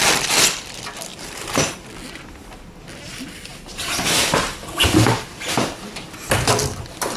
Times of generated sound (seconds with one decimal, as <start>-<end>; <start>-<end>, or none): 1.1-1.7

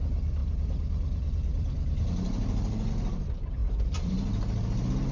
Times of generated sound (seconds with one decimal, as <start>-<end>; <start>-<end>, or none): 0.4-2.9; 3.6-4.1

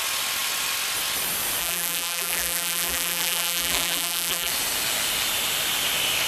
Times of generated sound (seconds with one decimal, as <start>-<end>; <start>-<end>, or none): 1.6-4.5

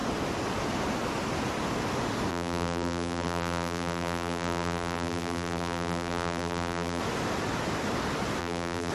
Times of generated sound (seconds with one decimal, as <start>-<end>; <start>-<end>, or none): 2.3-7.0; 8.4-8.9

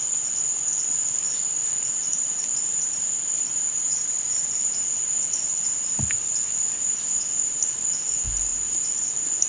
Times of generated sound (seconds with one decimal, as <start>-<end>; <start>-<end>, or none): 2.0-5.1; 6.5-7.2; 8.5-9.1

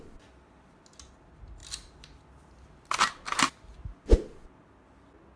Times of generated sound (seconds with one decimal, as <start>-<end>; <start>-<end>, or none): none

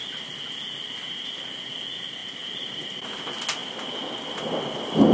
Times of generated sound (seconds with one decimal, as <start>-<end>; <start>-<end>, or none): none

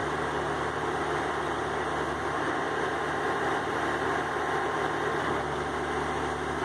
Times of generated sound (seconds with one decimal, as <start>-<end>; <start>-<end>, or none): none